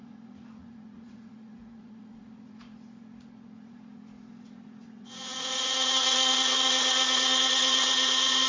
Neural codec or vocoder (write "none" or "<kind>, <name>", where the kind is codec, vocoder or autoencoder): vocoder, Vocos